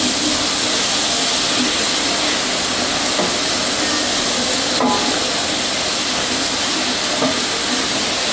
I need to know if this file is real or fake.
real